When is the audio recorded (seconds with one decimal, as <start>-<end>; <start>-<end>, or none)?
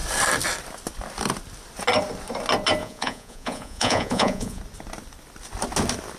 0.0-2.8; 4.6-6.2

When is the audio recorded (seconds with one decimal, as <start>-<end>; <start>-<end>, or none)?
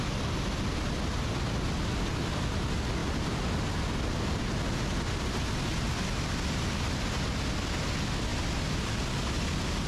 0.0-9.9